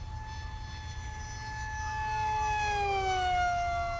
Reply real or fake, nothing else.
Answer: real